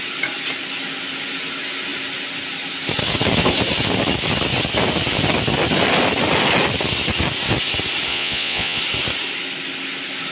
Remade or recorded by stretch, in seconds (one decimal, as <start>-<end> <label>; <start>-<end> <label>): 0.0-8.1 recorded; 8.1-8.8 remade; 8.8-10.3 recorded